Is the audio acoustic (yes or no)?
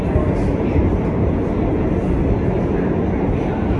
yes